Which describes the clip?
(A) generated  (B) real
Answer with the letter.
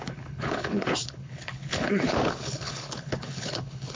A